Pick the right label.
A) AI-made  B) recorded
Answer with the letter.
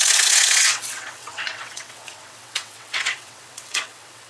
A